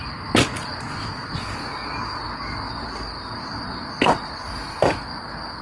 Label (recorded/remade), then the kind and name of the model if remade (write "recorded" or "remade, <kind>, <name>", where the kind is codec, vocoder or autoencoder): recorded